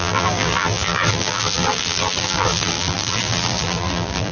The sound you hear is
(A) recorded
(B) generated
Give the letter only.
B